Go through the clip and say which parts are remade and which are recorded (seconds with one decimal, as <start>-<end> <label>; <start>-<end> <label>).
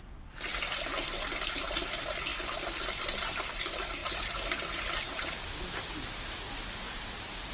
0.0-7.5 recorded